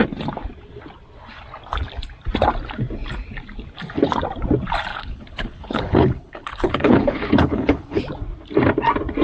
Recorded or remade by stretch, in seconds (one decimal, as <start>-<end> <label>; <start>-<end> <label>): 0.0-4.9 recorded; 4.9-8.0 remade; 8.0-9.2 recorded